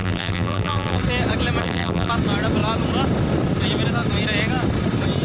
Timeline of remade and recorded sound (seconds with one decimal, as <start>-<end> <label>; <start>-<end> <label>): 0.0-1.0 remade; 1.0-1.6 recorded; 1.6-2.1 remade; 2.1-5.2 recorded